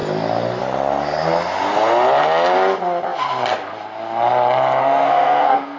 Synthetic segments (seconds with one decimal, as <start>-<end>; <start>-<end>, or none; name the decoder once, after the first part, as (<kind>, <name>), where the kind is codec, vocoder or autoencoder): 4.8-5.8 (codec, SNAC)